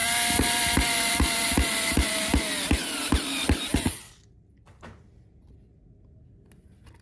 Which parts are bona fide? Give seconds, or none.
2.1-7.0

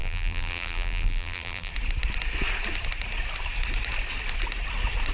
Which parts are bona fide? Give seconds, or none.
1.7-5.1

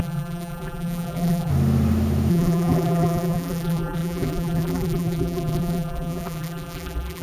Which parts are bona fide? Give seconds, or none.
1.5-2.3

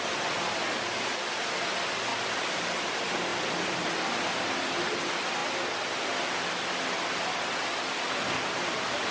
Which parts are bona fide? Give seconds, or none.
0.0-2.1; 2.6-9.1

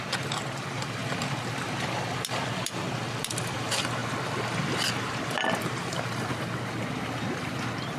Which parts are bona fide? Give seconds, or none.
0.0-8.0

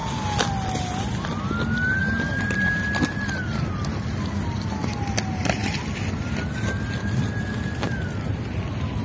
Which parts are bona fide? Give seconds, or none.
0.0-9.0

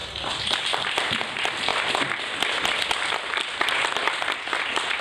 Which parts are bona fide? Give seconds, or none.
0.0-5.0